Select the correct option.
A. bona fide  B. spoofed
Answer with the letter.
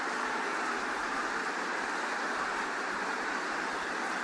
A